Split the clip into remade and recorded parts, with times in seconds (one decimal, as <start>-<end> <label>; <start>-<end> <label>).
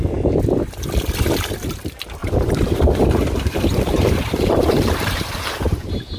0.0-2.2 recorded; 2.2-6.2 remade